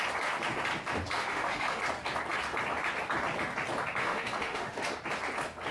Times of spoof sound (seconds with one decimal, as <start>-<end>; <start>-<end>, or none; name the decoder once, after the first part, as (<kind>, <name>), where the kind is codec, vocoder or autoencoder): 1.2-1.8 (autoencoder, DAC-VAE); 4.0-4.9

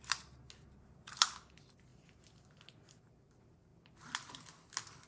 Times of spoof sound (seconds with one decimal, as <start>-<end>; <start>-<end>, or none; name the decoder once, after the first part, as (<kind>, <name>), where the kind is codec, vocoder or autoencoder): none